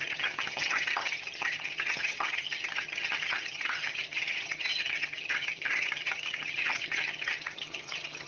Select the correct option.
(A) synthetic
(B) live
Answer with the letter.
A